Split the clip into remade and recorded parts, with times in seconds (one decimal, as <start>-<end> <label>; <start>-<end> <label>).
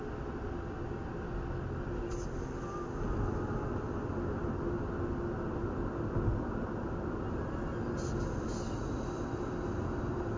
0.0-10.4 recorded